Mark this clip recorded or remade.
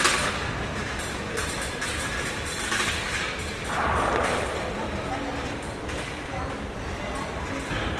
recorded